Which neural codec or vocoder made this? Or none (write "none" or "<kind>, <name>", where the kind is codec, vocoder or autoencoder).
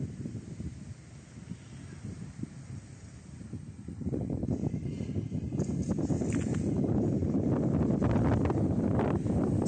none